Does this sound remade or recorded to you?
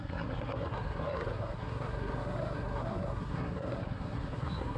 remade